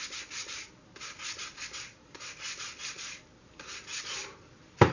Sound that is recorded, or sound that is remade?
remade